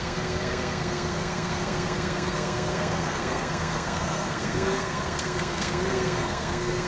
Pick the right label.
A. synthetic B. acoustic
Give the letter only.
A